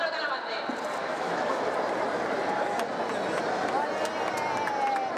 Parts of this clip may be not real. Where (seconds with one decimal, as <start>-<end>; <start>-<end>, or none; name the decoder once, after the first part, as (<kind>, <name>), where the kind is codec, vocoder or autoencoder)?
1.0-1.6 (autoencoder, DAC-VAE)